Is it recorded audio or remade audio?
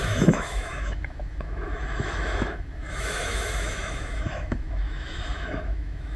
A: remade